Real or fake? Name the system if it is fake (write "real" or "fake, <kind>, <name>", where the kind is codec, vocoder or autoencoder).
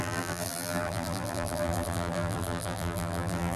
fake, vocoder, BigVGAN v2